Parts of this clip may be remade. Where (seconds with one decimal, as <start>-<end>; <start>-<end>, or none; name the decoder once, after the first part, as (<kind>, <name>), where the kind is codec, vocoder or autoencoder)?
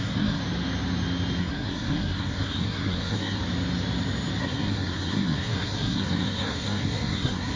0.0-0.4 (codec, SNAC); 1.4-3.4; 4.4-7.6